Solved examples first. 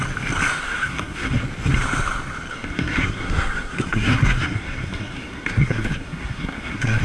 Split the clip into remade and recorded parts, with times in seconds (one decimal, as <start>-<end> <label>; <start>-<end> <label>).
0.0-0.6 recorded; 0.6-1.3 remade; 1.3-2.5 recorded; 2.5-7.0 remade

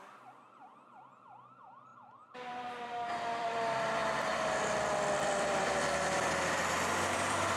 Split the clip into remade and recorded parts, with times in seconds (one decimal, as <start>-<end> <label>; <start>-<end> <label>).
0.0-7.6 remade

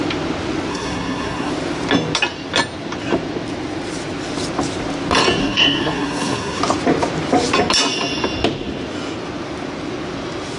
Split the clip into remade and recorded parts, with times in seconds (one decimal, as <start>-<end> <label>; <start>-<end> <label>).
0.0-0.7 recorded; 0.7-1.5 remade; 1.5-5.4 recorded; 5.4-6.6 remade; 6.6-10.6 recorded

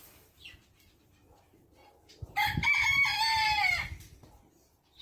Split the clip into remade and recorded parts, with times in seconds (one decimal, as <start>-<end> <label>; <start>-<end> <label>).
0.0-5.0 recorded

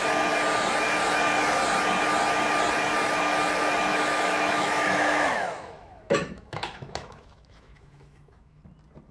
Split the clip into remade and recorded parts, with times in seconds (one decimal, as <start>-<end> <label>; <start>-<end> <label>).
0.0-3.9 recorded; 3.9-8.6 remade; 8.6-9.1 recorded

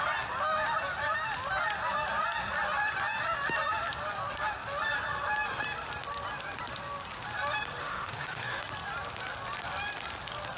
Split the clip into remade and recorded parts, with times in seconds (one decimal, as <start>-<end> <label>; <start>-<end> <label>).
0.0-7.8 recorded; 7.8-8.6 remade; 8.6-10.6 recorded

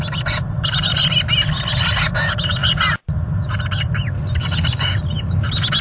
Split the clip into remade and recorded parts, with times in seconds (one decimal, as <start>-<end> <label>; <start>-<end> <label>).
0.0-5.8 recorded